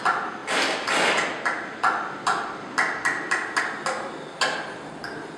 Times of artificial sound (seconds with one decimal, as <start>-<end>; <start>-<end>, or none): none